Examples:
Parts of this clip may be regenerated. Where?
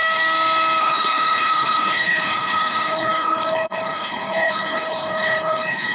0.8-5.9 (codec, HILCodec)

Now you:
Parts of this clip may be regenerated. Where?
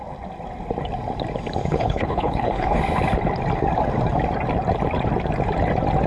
1.6-2.8 (codec, HILCodec)